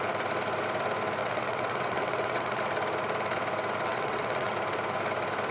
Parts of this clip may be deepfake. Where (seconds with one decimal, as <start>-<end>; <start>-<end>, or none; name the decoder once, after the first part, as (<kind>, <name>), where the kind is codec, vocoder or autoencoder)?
1.2-2.6 (vocoder, WaveNeXt); 3.9-4.5